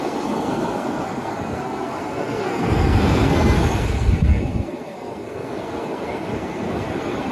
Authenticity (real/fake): fake